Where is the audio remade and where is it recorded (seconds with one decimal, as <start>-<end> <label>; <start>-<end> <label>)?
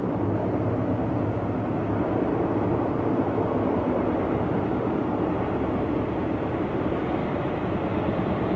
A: 0.0-8.6 recorded